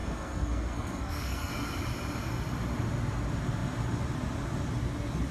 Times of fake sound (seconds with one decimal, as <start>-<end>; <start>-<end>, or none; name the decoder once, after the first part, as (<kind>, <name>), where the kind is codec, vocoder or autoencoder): 0.0-1.5 (codec, SNAC)